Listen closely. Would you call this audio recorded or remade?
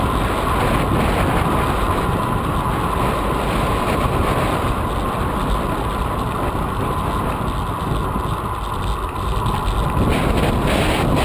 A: recorded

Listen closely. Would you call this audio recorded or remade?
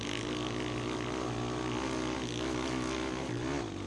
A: recorded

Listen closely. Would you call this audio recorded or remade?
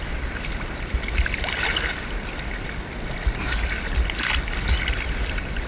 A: recorded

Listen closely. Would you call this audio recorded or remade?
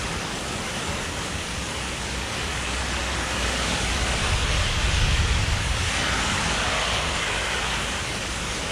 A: remade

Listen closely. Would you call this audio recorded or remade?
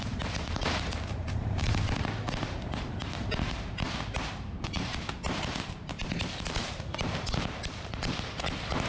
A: remade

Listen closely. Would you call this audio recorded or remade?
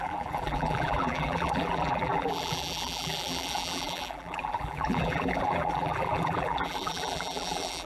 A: remade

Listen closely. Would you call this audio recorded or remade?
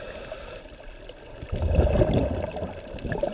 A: recorded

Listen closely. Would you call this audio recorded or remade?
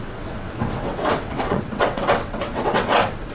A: remade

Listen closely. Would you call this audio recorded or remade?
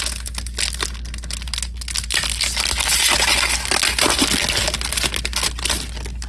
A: recorded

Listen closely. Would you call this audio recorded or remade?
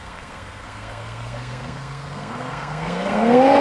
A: remade